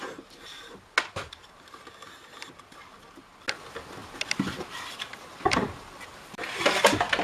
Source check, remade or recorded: recorded